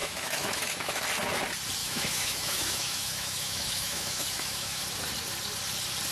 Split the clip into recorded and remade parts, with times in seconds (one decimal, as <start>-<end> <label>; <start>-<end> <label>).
0.0-1.0 remade; 1.0-1.8 recorded; 1.8-4.8 remade; 4.8-6.1 recorded